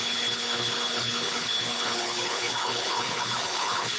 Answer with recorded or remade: remade